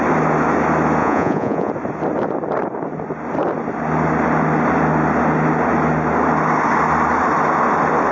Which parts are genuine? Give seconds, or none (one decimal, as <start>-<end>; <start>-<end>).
0.0-1.0; 1.7-8.1